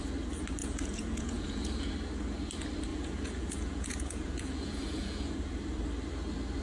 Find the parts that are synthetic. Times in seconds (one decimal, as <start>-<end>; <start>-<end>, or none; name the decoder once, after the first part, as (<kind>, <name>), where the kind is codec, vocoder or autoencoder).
0.6-1.9 (vocoder, Vocos); 2.9-5.4